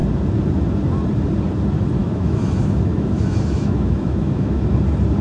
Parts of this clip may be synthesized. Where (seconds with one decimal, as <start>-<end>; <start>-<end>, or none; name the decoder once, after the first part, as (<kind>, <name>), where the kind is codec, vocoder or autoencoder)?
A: 2.0-4.7 (autoencoder, DAC-VAE)